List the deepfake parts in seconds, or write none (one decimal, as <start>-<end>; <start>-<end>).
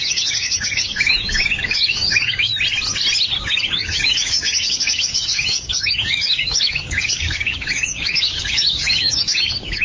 0.0-2.5; 3.4-9.8